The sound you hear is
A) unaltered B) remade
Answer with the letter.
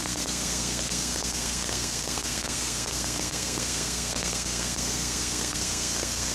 B